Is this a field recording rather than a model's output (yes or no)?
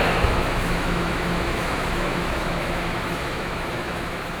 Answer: no